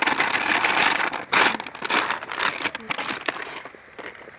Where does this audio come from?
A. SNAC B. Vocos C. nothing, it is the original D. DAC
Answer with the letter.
C